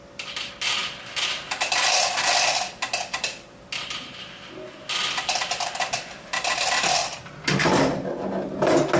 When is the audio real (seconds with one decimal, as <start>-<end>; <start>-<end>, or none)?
0.0-9.0